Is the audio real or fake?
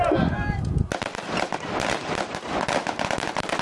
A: real